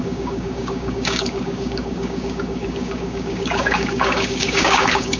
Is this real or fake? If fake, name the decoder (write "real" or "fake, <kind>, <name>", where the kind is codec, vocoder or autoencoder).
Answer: fake, codec, DAC